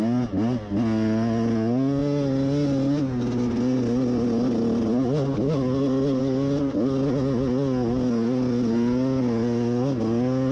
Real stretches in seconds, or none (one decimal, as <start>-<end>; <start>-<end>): 0.0-10.5